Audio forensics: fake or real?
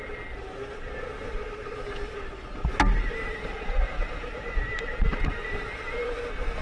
real